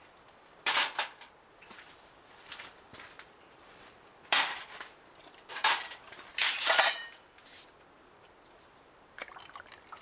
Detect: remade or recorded remade